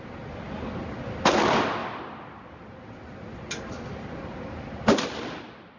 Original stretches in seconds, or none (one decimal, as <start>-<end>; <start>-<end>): 0.0-5.8